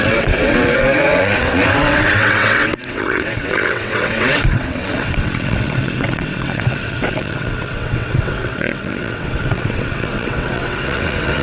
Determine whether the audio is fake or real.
fake